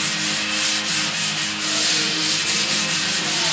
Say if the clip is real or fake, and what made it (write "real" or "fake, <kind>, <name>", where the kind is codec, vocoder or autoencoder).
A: real